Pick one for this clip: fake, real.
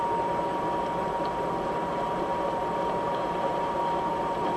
fake